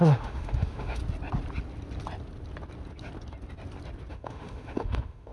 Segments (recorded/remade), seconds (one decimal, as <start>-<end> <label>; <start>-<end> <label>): 0.0-1.0 remade; 1.0-4.1 recorded; 4.1-5.3 remade